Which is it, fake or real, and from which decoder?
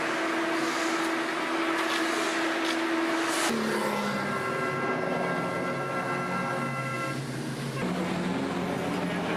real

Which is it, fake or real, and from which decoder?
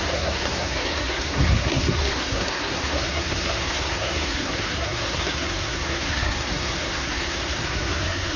fake, codec, SNAC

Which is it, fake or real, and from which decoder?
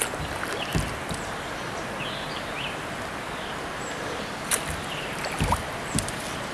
real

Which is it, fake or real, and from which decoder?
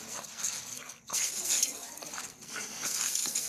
fake, codec, SNAC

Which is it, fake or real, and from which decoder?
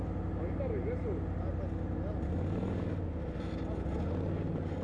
real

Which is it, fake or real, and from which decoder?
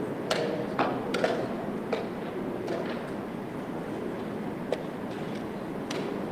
real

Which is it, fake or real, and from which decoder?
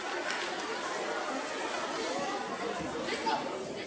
real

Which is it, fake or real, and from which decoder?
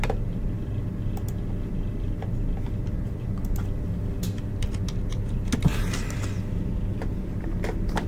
real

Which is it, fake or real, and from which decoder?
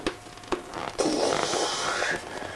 real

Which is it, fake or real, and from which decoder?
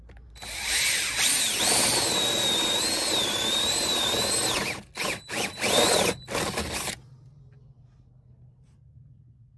real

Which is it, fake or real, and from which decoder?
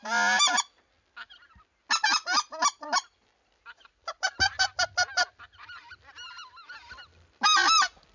real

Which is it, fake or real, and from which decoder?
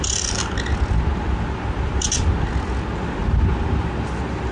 real